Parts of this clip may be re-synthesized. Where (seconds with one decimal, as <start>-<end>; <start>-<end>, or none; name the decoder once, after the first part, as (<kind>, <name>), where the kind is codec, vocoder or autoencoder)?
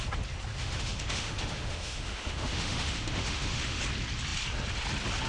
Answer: 0.6-3.8 (autoencoder, DAC-VAE)